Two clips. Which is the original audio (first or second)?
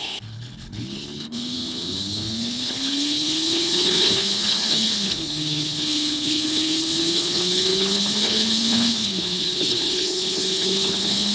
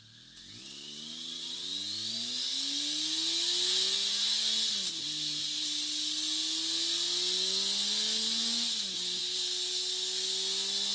second